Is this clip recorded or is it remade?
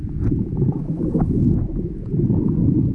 remade